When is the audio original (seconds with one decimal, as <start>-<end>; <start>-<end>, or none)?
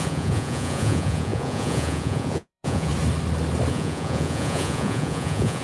2.9-3.7